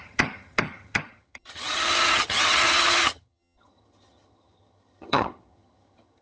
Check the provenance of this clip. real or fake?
fake